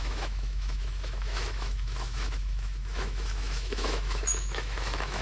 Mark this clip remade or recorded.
remade